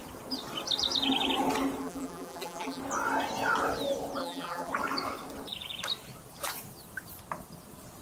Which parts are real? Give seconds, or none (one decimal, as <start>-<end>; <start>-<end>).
0.0-1.8; 2.8-4.2; 4.7-8.0